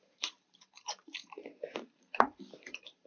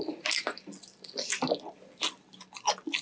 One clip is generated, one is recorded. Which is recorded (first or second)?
second